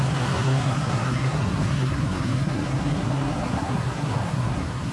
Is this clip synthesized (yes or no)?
yes